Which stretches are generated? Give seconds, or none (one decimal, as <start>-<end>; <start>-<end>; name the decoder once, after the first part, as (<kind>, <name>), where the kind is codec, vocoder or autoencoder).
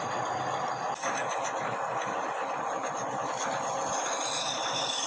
none